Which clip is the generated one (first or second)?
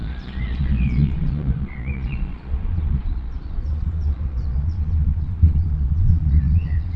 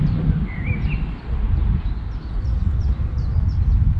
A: first